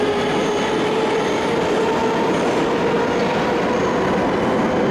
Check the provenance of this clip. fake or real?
real